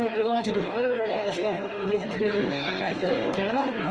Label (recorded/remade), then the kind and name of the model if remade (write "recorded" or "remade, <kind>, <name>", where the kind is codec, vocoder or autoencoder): remade, codec, SNAC